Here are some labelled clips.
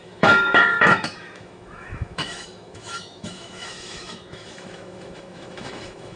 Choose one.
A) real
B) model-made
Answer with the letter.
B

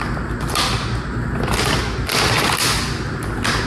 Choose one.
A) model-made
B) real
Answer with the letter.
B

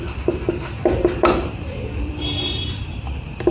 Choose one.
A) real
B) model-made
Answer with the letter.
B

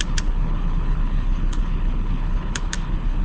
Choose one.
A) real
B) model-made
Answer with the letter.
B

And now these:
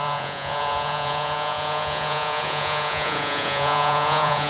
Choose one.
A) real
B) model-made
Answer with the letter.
B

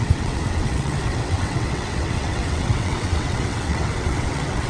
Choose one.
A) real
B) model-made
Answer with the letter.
B